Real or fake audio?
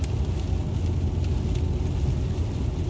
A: real